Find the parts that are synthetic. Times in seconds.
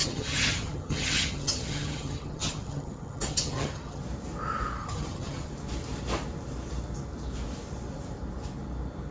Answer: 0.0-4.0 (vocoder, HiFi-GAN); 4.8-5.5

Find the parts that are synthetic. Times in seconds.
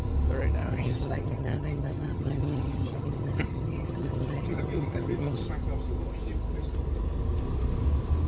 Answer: 0.6-5.5 (vocoder, HiFi-GAN)